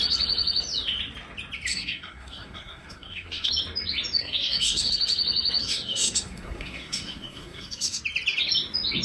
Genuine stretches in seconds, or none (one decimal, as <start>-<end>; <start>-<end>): 0.0-1.7; 3.5-4.2; 4.9-5.6; 8.0-9.0